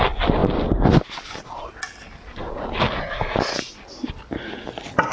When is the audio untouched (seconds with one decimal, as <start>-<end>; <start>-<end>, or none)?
0.0-5.1

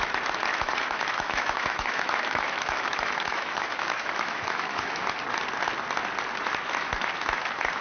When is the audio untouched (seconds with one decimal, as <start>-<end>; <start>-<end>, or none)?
0.0-0.5; 5.1-7.8

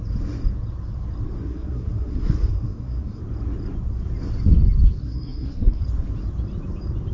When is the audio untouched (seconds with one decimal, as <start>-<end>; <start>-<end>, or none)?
0.0-1.4; 3.2-5.0; 5.8-7.1

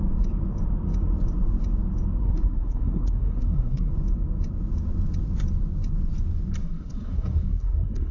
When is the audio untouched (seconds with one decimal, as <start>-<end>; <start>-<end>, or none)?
0.0-2.2; 3.9-6.6

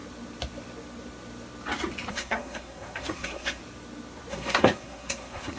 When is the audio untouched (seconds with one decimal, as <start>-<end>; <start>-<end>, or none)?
0.0-2.1; 3.6-4.3